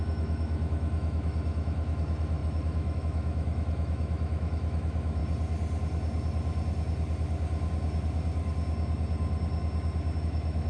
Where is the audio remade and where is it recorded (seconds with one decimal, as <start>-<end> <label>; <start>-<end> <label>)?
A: 0.0-5.2 remade; 5.2-10.2 recorded; 10.2-10.7 remade